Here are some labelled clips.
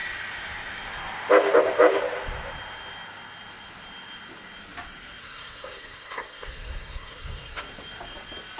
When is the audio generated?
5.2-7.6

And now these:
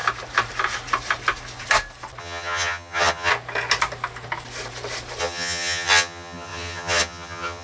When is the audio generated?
2.2-3.3; 5.2-7.6

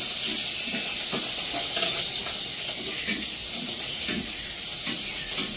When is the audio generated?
3.4-4.5

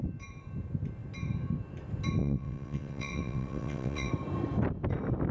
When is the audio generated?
2.2-4.1

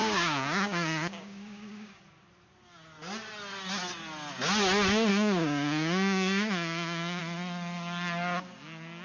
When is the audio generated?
0.0-2.0; 5.1-7.2

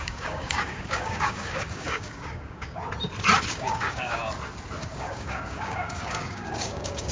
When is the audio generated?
0.0-2.8; 3.5-4.2; 4.8-7.1